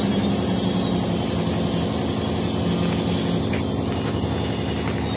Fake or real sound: real